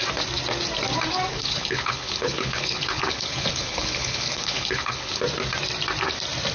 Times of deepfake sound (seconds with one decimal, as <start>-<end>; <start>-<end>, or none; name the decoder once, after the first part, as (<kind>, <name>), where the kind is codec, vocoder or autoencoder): 1.3-5.2 (codec, HILCodec)